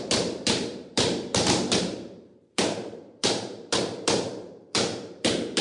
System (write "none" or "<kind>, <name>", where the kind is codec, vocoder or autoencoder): vocoder, BigVGAN v2